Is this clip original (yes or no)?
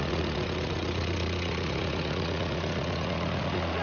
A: no